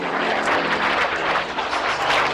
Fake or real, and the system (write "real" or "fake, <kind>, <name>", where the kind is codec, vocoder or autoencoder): fake, vocoder, BigVGAN v2